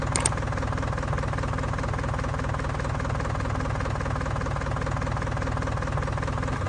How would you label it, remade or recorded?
recorded